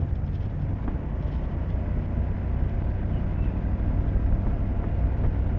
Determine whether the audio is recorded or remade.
recorded